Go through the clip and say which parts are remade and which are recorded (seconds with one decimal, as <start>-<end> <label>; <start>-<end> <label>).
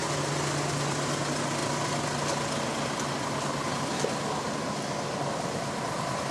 0.0-6.3 recorded